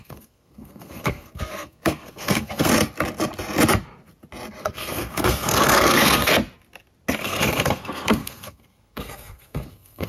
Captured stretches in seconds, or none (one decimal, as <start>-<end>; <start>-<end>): 2.7-4.6; 6.3-7.2